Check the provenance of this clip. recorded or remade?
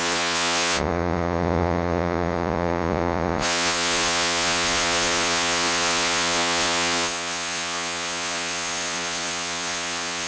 remade